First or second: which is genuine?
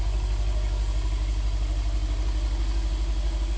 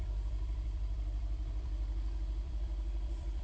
first